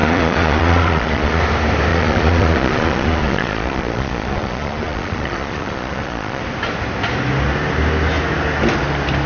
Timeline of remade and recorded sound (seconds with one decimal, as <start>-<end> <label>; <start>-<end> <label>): 0.0-1.4 remade; 1.4-1.9 recorded; 1.9-6.4 remade; 6.4-9.3 recorded